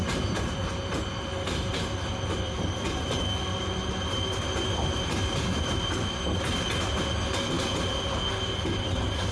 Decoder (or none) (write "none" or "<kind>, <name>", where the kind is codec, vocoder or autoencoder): none